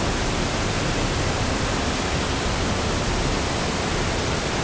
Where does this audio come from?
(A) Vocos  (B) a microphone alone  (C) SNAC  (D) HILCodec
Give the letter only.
B